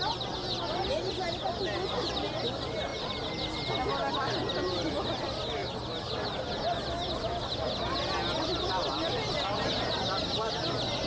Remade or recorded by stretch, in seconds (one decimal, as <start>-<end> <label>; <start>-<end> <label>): 0.0-2.9 recorded; 2.9-3.5 remade; 3.5-11.1 recorded